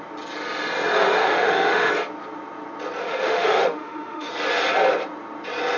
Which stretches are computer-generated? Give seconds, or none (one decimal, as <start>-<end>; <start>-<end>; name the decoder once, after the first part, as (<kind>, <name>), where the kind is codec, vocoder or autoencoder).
1.2-1.9 (autoencoder, DAC-VAE); 3.0-4.3